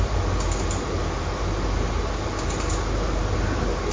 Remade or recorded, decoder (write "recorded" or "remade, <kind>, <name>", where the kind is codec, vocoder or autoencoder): recorded